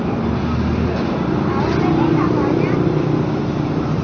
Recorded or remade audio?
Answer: recorded